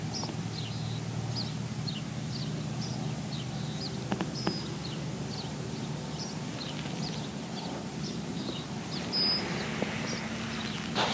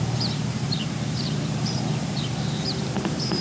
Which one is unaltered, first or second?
first